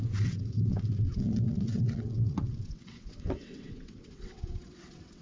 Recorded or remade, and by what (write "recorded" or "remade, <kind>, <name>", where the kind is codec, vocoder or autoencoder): remade, vocoder, WaveNeXt